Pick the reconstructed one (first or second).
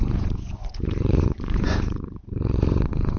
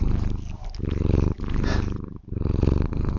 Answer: first